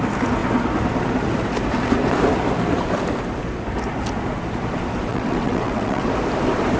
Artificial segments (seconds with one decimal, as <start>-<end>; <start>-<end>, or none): 5.1-6.1